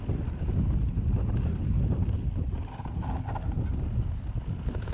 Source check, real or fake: real